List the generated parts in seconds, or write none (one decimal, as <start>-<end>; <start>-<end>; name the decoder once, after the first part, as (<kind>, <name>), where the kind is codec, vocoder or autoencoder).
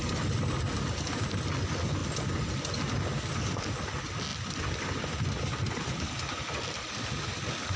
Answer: 4.3-7.8 (vocoder, BigVGAN v2)